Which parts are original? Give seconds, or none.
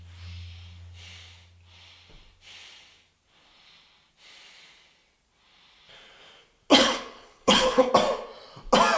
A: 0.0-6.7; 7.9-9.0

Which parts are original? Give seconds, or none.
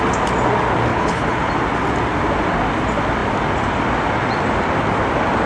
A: 0.0-0.9; 1.5-5.5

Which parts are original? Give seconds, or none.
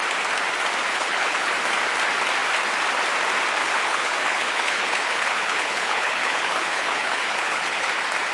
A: 0.0-0.9; 1.5-3.6; 7.9-8.3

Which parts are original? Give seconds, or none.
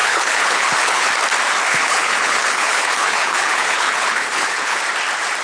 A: 1.1-1.7; 4.8-5.4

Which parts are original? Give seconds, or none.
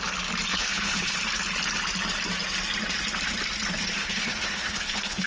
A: 0.0-0.5; 1.2-4.0